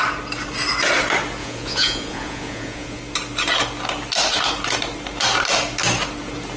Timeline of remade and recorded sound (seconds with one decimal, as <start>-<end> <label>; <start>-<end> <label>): 0.0-1.4 recorded; 1.4-3.0 remade; 3.0-6.6 recorded